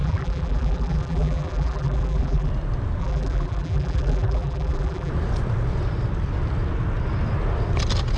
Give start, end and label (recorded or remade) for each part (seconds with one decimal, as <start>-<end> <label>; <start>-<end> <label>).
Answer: 0.0-2.5 remade; 2.5-3.0 recorded; 3.0-5.1 remade; 5.1-8.2 recorded